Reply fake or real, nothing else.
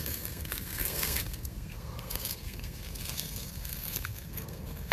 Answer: fake